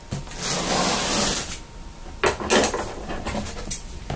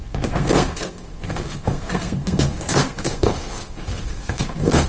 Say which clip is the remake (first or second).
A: second